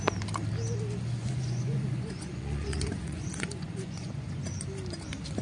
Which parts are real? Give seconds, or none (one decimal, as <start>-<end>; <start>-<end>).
0.0-1.2; 4.4-5.4